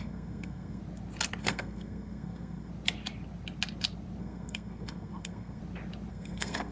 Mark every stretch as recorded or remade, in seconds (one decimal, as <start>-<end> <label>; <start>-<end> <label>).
0.0-0.8 remade; 0.8-1.4 recorded; 1.4-2.7 remade; 2.7-4.2 recorded; 4.2-5.6 remade; 5.6-6.1 recorded; 6.1-6.7 remade